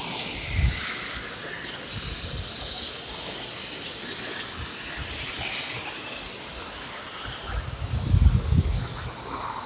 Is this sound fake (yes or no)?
no